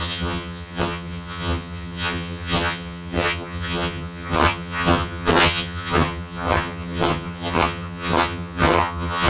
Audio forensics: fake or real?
fake